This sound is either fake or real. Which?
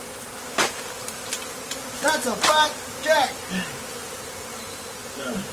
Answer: fake